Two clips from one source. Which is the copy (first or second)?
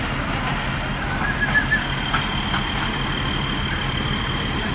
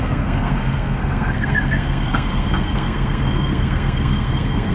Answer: second